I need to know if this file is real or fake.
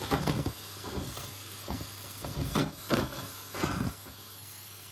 fake